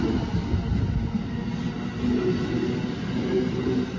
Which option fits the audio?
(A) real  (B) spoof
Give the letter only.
A